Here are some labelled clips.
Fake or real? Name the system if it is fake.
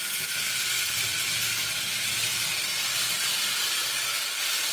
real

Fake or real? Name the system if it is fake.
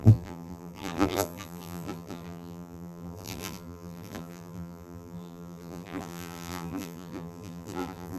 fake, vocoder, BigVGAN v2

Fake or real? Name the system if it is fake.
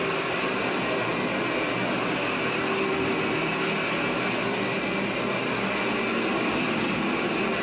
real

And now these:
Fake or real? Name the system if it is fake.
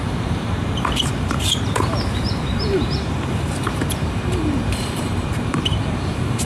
fake, vocoder, BigVGAN v2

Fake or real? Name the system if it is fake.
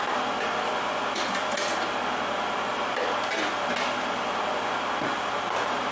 real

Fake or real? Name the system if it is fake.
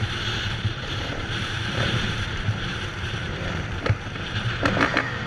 fake, vocoder, BigVGAN v2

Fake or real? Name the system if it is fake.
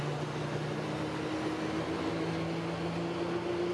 real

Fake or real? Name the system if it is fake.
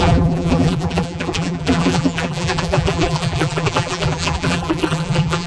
fake, vocoder, BigVGAN v2